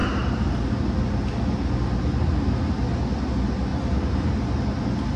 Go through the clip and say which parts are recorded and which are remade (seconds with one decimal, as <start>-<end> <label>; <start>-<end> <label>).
0.0-3.7 recorded; 3.7-4.3 remade; 4.3-5.2 recorded

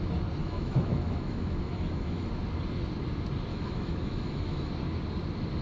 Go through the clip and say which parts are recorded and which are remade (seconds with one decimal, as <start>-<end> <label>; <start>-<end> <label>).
0.0-0.4 recorded; 0.4-2.3 remade; 2.3-3.5 recorded; 3.5-4.7 remade; 4.7-5.6 recorded

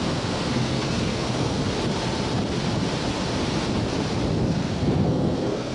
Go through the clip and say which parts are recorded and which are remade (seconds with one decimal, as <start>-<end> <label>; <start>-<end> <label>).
0.0-1.6 remade; 1.6-4.4 recorded; 4.4-5.7 remade

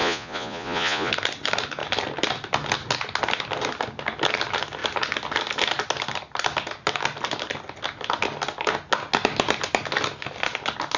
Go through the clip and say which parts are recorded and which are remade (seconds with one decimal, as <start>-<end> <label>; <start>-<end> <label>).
0.0-1.1 remade; 1.1-11.0 recorded

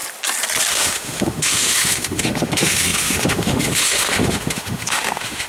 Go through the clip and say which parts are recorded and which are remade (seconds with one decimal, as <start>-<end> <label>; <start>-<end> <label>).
0.0-0.7 recorded; 0.7-5.5 remade